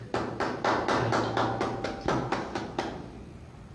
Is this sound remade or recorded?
recorded